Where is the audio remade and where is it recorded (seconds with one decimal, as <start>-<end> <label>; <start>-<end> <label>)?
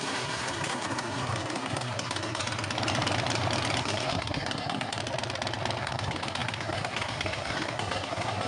0.0-2.4 remade; 2.4-3.8 recorded; 3.8-5.0 remade; 5.0-5.8 recorded; 5.8-8.5 remade